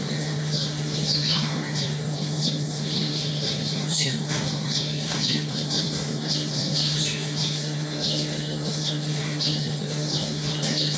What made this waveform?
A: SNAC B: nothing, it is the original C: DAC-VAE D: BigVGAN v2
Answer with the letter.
A